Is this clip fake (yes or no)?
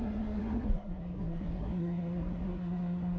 yes